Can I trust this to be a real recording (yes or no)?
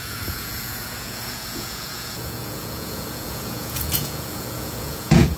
no